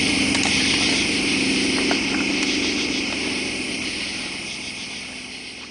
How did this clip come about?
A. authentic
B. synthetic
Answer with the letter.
A